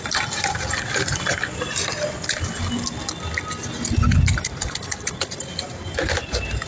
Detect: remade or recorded recorded